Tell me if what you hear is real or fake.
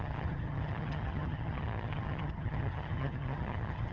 fake